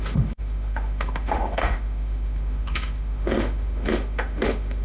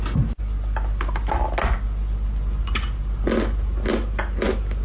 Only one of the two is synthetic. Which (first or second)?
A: first